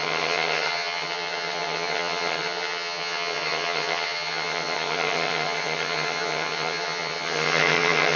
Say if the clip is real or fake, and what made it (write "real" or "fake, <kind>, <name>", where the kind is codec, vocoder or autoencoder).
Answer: fake, vocoder, HiFi-GAN